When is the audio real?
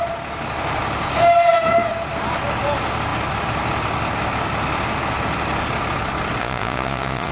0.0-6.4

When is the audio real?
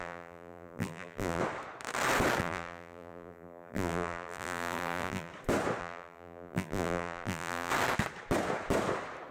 1.4-2.4; 5.3-5.8; 7.7-9.3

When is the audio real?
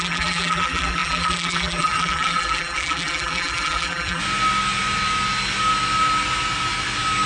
4.2-7.3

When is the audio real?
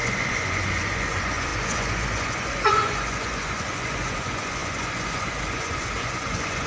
none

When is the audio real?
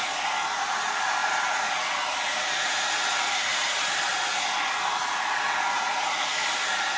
0.0-1.2; 1.7-3.5; 4.1-7.0